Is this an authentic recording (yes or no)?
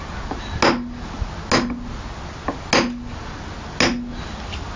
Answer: yes